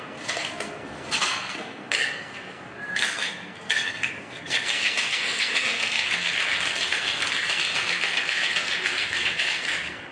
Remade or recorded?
remade